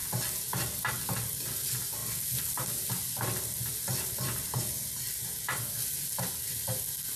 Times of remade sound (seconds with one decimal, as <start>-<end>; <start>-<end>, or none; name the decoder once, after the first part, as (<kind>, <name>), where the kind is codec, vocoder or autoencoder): none